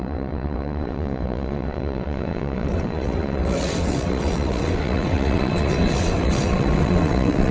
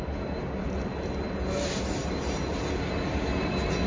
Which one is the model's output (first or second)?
first